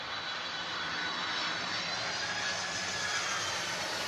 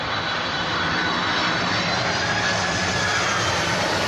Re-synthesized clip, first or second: second